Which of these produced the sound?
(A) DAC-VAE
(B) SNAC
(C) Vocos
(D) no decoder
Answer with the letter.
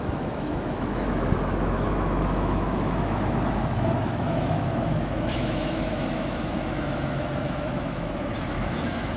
A